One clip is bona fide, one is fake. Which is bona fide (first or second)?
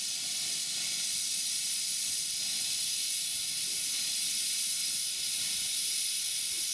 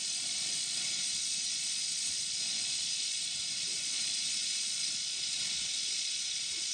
first